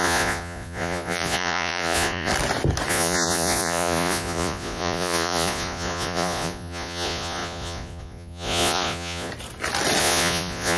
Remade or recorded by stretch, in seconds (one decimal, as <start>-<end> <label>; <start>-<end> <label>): 0.0-2.3 remade; 2.3-2.9 recorded; 2.9-9.3 remade; 9.3-10.0 recorded; 10.0-10.8 remade